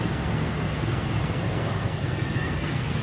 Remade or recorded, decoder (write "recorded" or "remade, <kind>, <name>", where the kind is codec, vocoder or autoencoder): remade, codec, SNAC